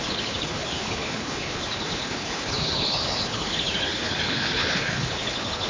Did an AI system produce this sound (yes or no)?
yes